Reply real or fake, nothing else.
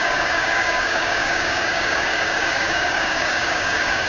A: fake